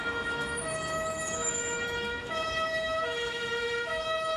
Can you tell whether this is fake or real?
fake